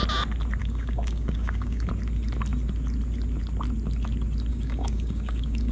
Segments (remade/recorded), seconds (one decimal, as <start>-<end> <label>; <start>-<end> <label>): 0.0-0.6 recorded; 0.6-1.9 remade; 1.9-4.5 recorded; 4.5-5.7 remade